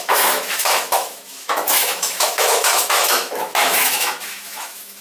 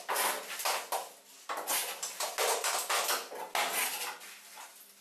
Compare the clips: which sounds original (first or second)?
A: second